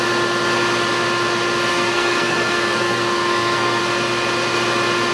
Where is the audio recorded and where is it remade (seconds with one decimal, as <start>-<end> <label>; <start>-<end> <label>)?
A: 0.0-1.7 recorded; 1.7-3.8 remade; 3.8-5.1 recorded